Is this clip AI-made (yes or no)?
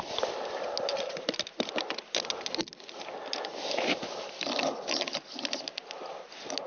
no